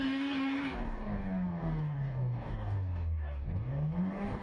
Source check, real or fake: fake